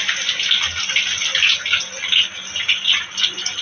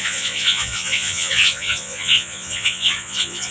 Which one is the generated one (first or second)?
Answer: second